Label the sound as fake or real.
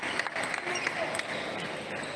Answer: real